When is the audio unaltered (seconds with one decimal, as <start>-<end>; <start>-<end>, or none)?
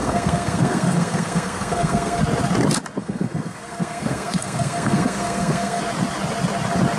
2.2-3.0; 5.8-7.0